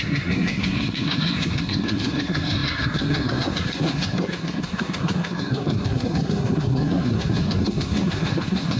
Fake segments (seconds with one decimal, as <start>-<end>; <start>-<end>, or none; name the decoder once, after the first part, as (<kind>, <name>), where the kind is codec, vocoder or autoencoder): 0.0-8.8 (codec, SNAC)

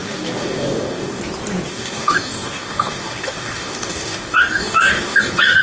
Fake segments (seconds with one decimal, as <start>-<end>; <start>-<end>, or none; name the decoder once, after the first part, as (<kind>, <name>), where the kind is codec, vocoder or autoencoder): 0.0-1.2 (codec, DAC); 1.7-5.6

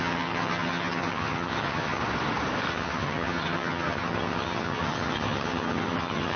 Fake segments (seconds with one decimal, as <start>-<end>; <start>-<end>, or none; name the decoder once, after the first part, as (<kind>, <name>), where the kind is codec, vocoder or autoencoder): 0.0-2.0 (vocoder, HiFi-GAN); 2.7-6.4

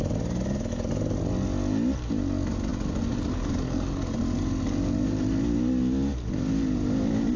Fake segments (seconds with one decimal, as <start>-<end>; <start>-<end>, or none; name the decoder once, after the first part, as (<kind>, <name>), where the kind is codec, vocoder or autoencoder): none